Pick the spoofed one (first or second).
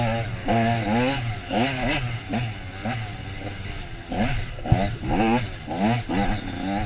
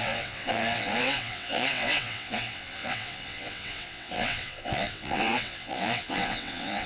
second